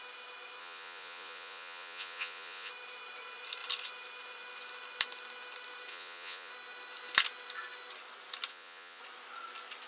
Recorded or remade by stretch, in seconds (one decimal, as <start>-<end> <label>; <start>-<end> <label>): 0.0-0.6 recorded; 0.6-2.7 remade; 2.7-5.9 recorded; 5.9-6.5 remade; 6.5-8.5 recorded; 8.5-9.0 remade; 9.0-9.9 recorded